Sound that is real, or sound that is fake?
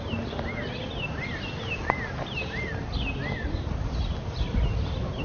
real